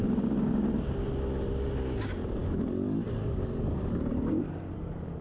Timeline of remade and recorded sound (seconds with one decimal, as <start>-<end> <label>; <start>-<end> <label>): 0.0-2.4 recorded; 2.4-4.1 remade; 4.1-5.2 recorded